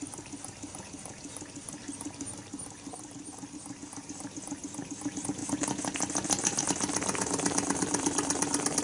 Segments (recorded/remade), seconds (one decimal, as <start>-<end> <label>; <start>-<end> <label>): 0.0-8.8 recorded